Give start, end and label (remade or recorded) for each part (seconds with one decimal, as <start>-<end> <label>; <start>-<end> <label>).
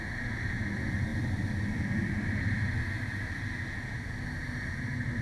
0.0-5.2 recorded